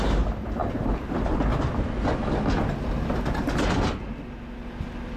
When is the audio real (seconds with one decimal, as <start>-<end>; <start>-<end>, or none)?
0.0-5.2